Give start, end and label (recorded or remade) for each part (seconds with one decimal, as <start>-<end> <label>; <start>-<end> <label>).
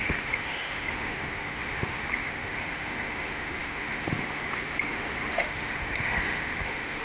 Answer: 0.0-7.0 remade